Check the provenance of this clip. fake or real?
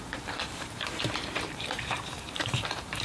fake